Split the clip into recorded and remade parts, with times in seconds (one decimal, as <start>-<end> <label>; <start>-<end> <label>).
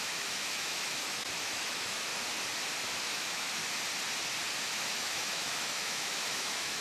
0.0-2.1 remade; 2.1-3.0 recorded; 3.0-3.6 remade; 3.6-4.6 recorded; 4.6-6.8 remade